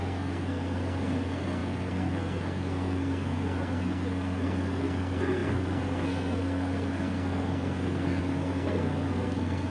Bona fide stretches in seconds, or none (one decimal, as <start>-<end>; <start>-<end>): none